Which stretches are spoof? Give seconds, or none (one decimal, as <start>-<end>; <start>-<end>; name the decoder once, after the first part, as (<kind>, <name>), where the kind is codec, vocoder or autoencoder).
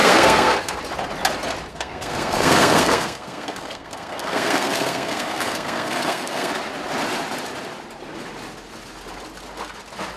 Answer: 0.0-0.8 (codec, SNAC); 1.7-6.5